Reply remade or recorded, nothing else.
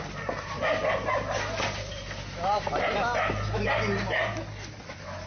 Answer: recorded